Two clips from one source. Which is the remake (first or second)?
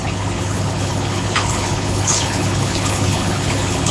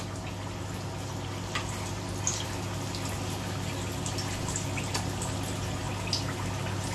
first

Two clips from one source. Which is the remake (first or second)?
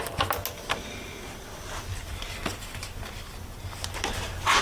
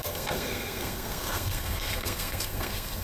second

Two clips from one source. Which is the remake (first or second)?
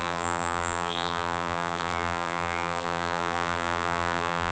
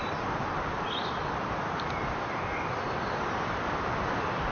first